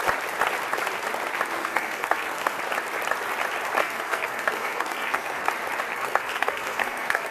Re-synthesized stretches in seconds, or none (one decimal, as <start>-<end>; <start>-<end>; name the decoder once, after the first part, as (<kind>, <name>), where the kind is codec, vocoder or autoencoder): 1.6-2.6 (codec, SNAC); 3.8-5.5; 5.9-7.3